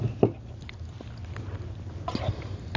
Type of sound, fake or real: real